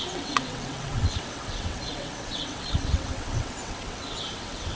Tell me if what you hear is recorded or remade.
remade